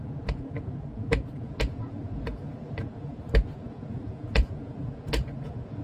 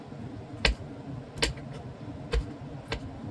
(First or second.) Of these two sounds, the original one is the second